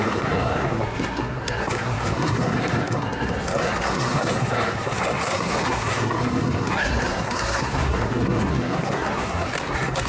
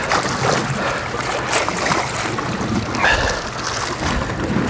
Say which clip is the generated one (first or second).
first